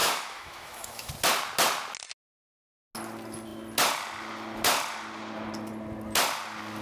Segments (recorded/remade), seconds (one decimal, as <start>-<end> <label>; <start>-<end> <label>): 0.0-1.1 remade; 1.1-6.8 recorded